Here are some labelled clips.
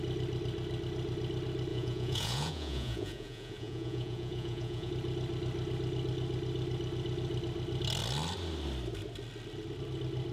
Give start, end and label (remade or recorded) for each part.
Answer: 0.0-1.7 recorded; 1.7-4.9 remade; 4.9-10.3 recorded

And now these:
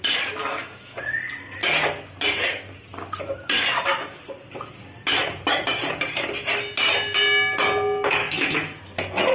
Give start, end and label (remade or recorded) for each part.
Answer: 0.0-0.4 recorded; 0.4-1.1 remade; 1.1-8.2 recorded; 8.2-8.8 remade; 8.8-9.3 recorded

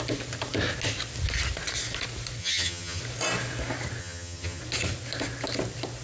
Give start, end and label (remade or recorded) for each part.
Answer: 0.0-2.4 recorded; 2.4-3.0 remade; 3.0-4.0 recorded; 4.0-4.6 remade; 4.6-6.0 recorded

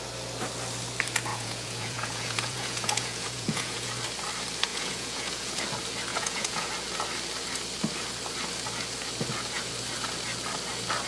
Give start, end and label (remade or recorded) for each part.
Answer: 0.0-1.3 recorded; 1.3-3.9 remade; 3.9-4.7 recorded; 4.7-5.6 remade; 5.6-6.1 recorded; 6.1-6.7 remade; 6.7-11.1 recorded

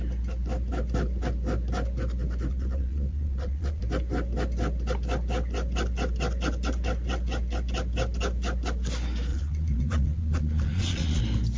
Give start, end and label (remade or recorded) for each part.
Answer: 0.0-2.5 recorded; 2.5-3.8 remade; 3.8-9.3 recorded; 9.3-11.2 remade; 11.2-11.6 recorded

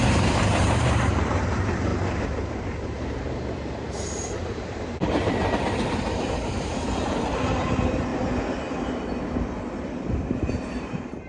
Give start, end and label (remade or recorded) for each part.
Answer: 0.0-1.9 remade; 1.9-2.5 recorded; 2.5-8.1 remade; 8.1-9.8 recorded; 9.8-11.3 remade

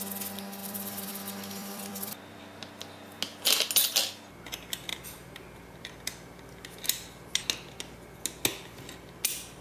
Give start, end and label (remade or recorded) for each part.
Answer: 0.0-0.6 recorded; 0.6-1.1 remade; 1.1-1.6 recorded; 1.6-2.4 remade; 2.4-4.9 recorded; 4.9-5.9 remade; 5.9-9.6 recorded